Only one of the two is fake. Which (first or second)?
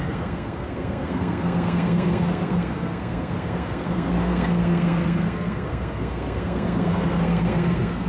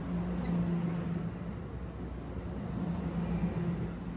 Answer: first